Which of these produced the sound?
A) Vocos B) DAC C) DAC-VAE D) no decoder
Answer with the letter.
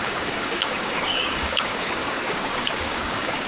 B